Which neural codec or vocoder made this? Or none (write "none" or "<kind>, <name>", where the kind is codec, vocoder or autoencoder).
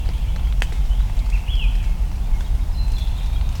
none